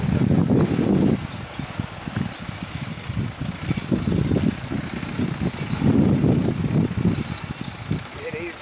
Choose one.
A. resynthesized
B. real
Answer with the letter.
B